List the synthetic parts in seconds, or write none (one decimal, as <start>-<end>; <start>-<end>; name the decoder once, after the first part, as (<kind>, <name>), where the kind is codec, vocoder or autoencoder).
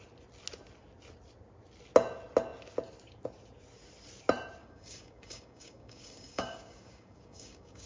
4.6-7.9 (codec, DAC)